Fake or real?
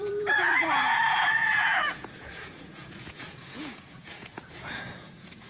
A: fake